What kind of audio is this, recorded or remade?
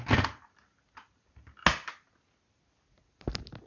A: recorded